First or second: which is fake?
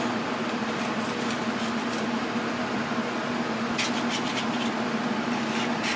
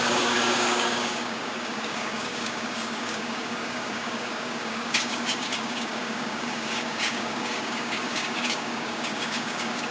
second